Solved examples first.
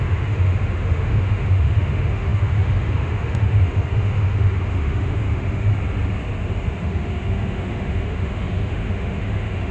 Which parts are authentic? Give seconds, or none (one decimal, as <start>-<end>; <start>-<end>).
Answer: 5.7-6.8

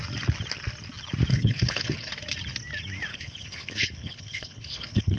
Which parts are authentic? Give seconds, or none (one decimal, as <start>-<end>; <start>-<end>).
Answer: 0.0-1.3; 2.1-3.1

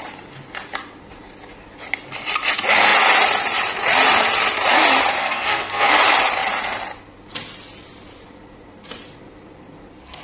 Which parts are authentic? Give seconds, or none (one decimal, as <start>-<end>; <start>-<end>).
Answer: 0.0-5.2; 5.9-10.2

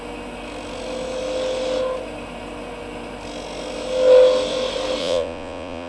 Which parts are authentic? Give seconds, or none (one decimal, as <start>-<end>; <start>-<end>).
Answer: 0.0-5.0

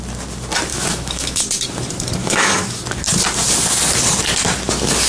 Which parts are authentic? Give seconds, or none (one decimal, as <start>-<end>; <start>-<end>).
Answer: 0.0-0.7; 1.4-2.2; 2.8-5.1

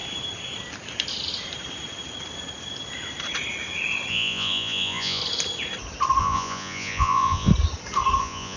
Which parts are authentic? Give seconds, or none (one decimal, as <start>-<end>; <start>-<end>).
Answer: 0.0-4.1; 5.2-6.2; 7.5-8.2

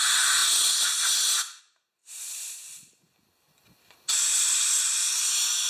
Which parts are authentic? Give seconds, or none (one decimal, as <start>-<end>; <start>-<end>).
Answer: 0.0-2.0; 3.6-4.3; 5.1-5.7